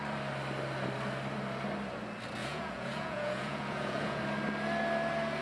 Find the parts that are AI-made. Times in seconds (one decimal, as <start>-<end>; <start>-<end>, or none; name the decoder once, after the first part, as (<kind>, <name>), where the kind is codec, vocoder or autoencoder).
2.4-4.2 (vocoder, Vocos)